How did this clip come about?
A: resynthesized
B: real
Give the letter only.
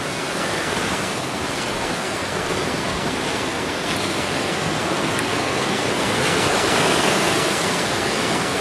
A